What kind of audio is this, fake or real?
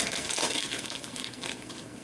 fake